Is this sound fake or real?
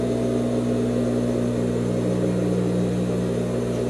real